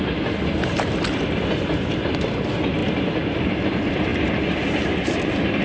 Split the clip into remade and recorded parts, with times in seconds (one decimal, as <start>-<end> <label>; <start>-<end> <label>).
0.0-5.6 recorded